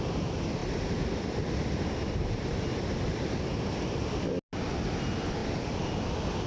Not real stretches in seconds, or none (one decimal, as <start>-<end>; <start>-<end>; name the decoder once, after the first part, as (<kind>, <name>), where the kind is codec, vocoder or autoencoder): none